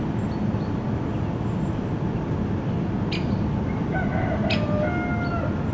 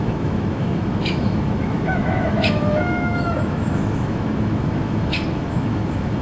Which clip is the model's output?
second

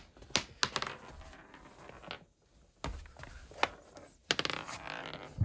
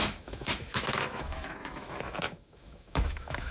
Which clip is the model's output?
second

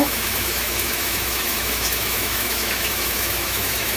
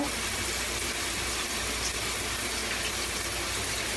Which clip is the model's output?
first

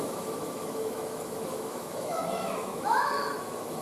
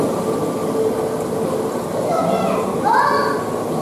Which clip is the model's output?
first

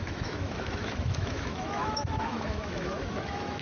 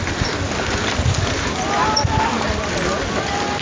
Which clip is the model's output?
first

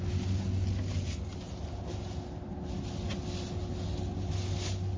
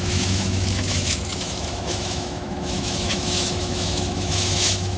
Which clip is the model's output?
second